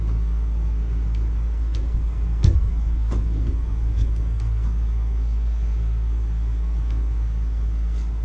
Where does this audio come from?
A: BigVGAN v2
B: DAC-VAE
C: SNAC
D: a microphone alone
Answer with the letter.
C